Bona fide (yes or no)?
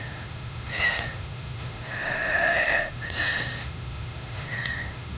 no